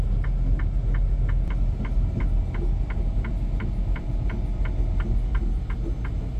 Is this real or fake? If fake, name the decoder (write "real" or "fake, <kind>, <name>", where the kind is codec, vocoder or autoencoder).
real